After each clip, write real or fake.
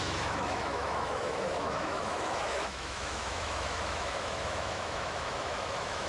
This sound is fake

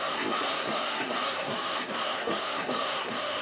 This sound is fake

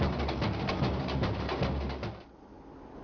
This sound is real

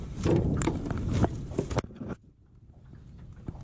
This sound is real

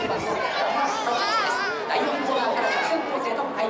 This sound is real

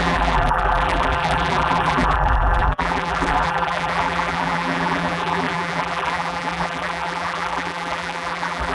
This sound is fake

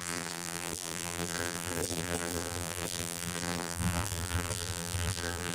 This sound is fake